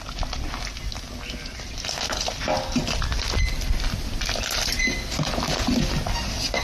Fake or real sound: real